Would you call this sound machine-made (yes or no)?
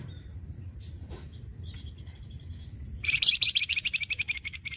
yes